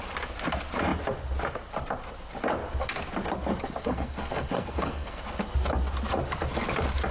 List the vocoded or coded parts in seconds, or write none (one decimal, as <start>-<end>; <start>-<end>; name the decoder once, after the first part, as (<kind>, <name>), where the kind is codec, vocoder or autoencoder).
3.8-5.2 (codec, SNAC)